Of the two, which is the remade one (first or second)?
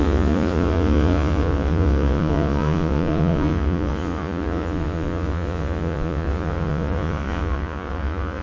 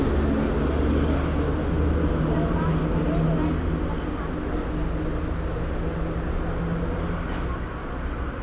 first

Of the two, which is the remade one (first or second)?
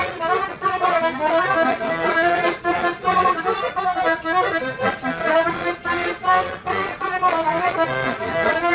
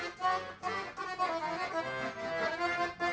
first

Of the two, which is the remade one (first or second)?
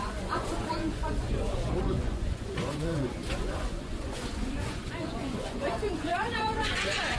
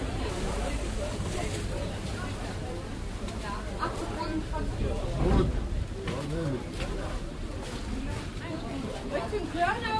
first